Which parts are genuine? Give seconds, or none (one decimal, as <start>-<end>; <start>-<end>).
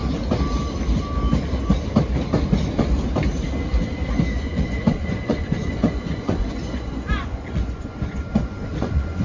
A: 0.0-4.4